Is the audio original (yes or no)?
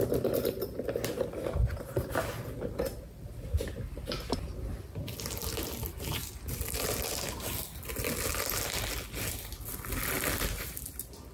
yes